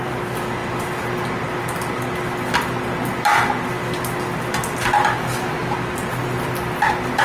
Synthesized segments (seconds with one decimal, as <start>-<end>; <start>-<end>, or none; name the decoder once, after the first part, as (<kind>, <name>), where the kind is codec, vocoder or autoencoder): none